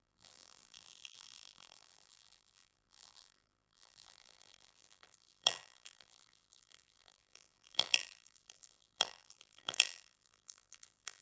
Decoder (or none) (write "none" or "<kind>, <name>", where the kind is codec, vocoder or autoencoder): vocoder, BigVGAN v2